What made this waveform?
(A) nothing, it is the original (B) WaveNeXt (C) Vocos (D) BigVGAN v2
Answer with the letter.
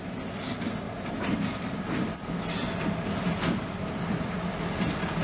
A